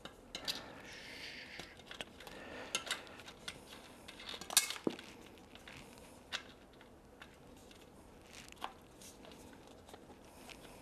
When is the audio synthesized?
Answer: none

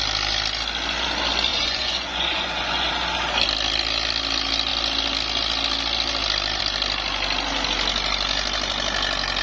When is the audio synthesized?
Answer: 1.5-2.9

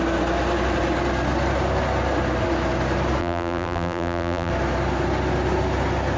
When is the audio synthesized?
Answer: 3.2-4.5

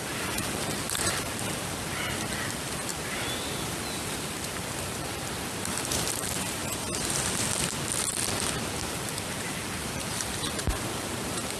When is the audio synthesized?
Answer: 0.0-6.6; 8.9-11.6

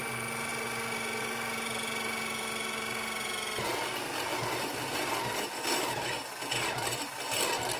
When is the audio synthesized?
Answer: none

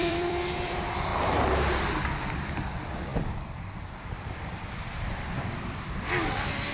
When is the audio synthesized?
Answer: 0.0-1.1; 2.2-6.7